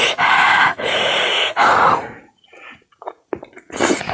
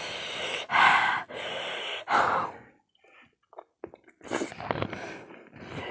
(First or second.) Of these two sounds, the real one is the second